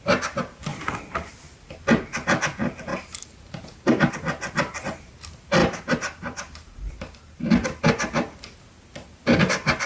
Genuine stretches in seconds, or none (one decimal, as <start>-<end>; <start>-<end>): 0.0-2.9; 4.1-5.6; 7.5-9.9